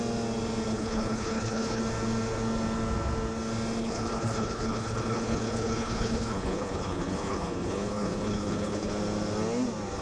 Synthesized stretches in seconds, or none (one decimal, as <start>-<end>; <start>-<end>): 0.7-1.8; 3.8-8.9

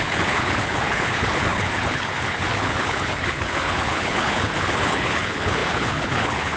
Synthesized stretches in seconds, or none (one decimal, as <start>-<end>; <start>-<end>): 0.0-6.6

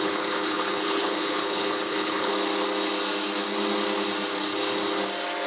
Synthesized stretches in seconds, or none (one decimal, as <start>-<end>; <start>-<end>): 0.0-2.3

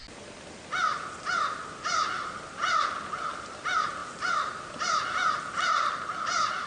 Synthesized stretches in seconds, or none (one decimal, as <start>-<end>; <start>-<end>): none